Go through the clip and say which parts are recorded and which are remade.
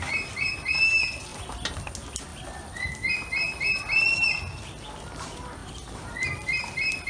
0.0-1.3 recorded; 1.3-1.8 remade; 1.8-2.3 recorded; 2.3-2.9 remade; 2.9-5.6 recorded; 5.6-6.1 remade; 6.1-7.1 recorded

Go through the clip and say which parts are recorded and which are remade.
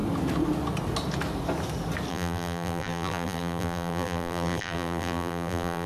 0.0-2.1 recorded; 2.1-5.9 remade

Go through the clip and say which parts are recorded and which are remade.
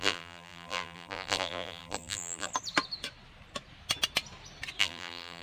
0.0-2.5 remade; 2.5-4.8 recorded; 4.8-5.4 remade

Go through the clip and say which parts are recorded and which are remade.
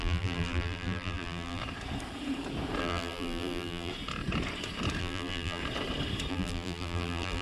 0.0-1.6 remade; 1.6-2.8 recorded; 2.8-3.9 remade; 3.9-5.0 recorded; 5.0-5.6 remade; 5.6-6.3 recorded; 6.3-7.4 remade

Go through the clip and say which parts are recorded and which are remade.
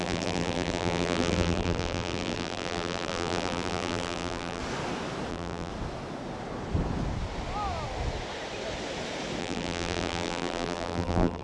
0.0-4.6 remade; 4.6-5.3 recorded; 5.3-5.7 remade; 5.7-9.4 recorded; 9.4-11.4 remade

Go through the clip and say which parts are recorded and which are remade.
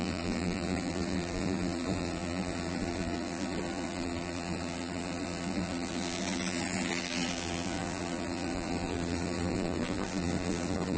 0.0-11.0 remade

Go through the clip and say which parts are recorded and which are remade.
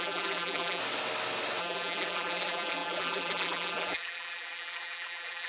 0.0-0.8 remade; 0.8-1.6 recorded; 1.6-5.5 remade